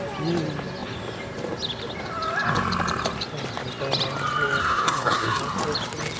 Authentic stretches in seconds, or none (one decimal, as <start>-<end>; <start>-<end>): 0.0-4.6; 5.4-6.2